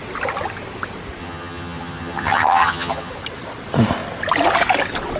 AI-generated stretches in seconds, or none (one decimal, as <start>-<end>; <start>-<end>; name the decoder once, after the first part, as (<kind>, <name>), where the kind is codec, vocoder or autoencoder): 1.2-3.1 (vocoder, HiFi-GAN)